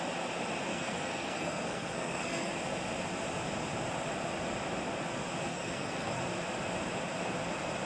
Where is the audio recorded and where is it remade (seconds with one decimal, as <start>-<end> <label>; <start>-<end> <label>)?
0.0-0.7 recorded; 0.7-2.5 remade; 2.5-5.5 recorded; 5.5-6.2 remade; 6.2-7.9 recorded